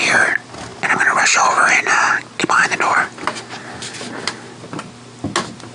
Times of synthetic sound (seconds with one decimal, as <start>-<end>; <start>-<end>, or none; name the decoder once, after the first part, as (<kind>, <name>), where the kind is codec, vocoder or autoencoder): none